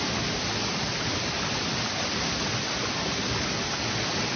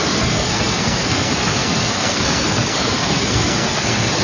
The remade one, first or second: second